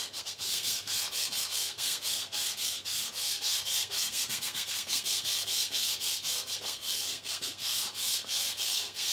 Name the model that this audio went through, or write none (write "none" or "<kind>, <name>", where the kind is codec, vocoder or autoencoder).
codec, SNAC